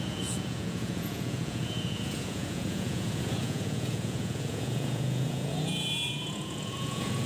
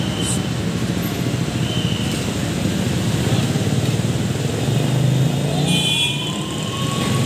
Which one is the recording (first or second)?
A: second